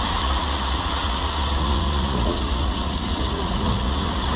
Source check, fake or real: fake